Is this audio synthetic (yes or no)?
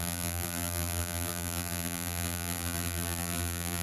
yes